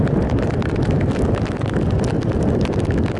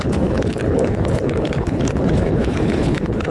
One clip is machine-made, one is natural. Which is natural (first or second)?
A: first